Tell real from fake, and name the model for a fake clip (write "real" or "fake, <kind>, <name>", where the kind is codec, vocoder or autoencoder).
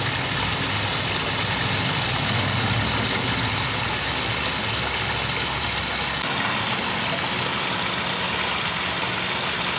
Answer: real